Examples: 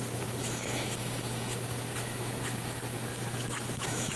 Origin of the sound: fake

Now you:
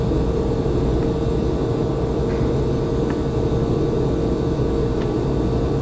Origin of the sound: real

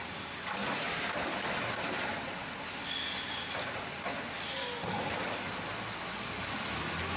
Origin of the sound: real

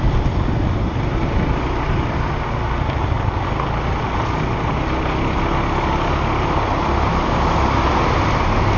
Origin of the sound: real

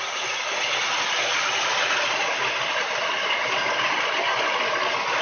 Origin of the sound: real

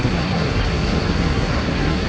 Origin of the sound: fake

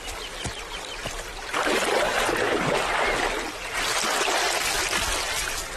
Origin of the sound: real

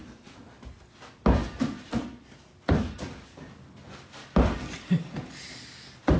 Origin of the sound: real